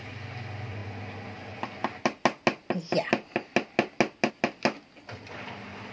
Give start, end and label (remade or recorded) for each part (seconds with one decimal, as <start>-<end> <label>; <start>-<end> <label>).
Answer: 0.0-5.9 recorded